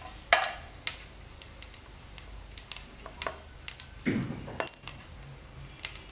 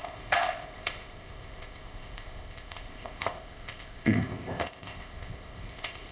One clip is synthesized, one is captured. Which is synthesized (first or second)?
second